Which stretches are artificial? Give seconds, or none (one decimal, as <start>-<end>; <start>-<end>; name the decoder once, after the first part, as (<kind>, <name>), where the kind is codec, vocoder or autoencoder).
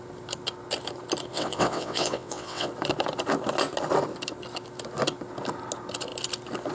1.3-2.7 (vocoder, WaveNeXt)